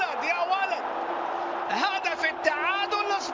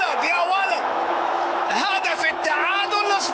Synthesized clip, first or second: second